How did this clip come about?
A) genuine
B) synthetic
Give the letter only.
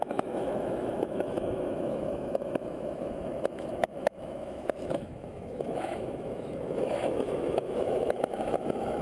B